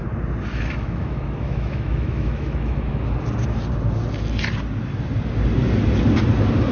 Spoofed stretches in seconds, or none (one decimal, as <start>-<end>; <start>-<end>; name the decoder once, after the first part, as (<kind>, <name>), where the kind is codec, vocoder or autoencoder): 0.5-3.0 (autoencoder, DAC-VAE)